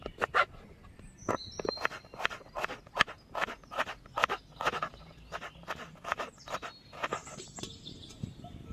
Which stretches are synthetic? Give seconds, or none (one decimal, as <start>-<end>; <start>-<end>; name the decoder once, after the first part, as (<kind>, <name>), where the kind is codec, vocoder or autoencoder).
none